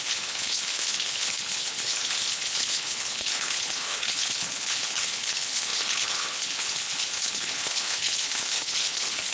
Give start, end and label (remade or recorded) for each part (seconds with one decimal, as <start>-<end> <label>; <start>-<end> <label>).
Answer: 0.0-9.3 remade